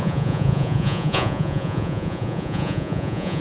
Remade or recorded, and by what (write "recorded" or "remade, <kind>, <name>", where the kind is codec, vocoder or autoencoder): remade, vocoder, Vocos